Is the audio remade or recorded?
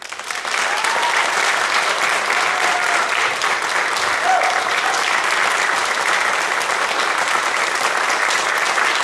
recorded